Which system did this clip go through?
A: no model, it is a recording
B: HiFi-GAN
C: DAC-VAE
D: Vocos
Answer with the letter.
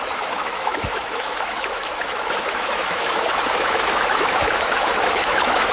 C